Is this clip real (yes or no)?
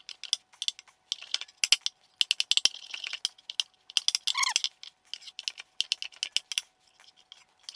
yes